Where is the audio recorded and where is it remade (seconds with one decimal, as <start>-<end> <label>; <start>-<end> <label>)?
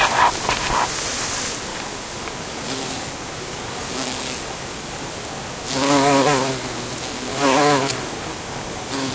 0.0-1.7 recorded; 1.7-5.1 remade; 5.1-5.7 recorded; 5.7-6.5 remade; 6.5-7.3 recorded; 7.3-9.1 remade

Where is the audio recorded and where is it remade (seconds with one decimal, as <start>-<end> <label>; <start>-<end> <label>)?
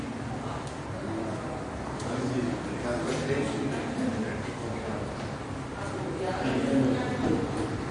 0.0-7.9 recorded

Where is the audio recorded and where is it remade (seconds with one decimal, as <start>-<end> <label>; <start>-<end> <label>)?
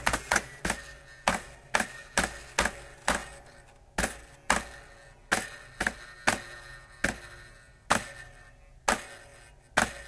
0.0-10.1 recorded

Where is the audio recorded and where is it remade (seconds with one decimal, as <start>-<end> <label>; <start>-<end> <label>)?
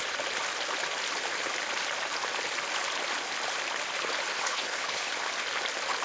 0.0-4.3 recorded; 4.3-5.1 remade; 5.1-6.0 recorded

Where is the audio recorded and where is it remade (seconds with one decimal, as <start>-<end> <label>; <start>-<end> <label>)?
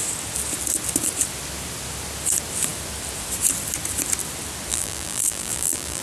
0.0-4.7 recorded; 4.7-6.0 remade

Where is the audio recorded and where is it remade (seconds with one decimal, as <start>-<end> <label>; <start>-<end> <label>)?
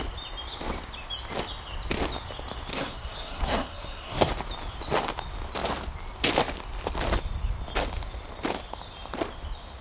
0.0-2.7 recorded; 2.7-4.3 remade; 4.3-9.8 recorded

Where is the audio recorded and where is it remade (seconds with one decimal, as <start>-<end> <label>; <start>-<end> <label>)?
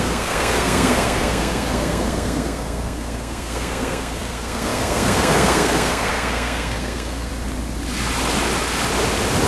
0.0-7.3 remade; 7.3-9.5 recorded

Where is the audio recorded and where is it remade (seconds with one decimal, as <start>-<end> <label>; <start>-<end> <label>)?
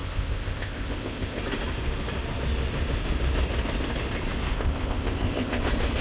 0.0-1.4 remade; 1.4-4.5 recorded; 4.5-5.6 remade; 5.6-6.0 recorded